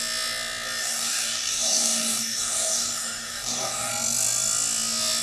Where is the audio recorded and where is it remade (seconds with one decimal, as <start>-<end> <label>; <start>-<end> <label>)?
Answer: 0.0-0.8 recorded; 0.8-3.9 remade; 3.9-5.2 recorded